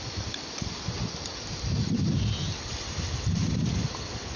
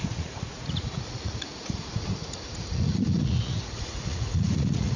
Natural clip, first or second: first